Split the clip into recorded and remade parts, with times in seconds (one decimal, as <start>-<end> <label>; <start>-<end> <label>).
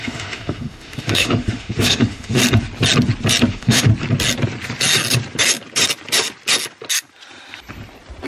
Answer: 0.0-2.4 remade; 2.4-3.5 recorded; 3.5-3.9 remade; 3.9-8.3 recorded